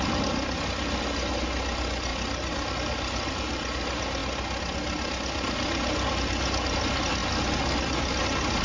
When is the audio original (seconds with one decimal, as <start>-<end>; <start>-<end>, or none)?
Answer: 0.0-8.6